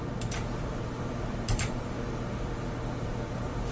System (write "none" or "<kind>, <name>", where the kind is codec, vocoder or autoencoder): vocoder, BigVGAN v2